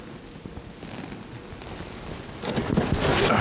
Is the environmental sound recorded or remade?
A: recorded